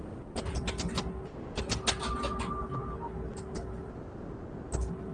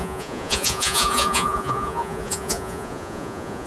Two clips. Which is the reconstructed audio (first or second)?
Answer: second